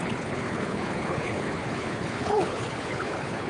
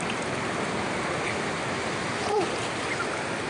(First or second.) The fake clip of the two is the first